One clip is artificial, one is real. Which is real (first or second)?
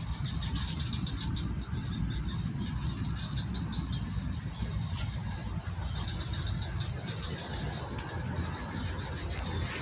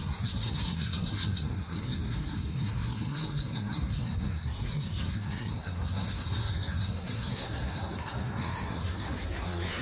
first